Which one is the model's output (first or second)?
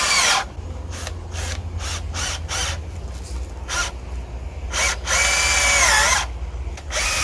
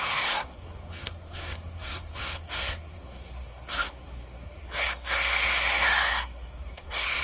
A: second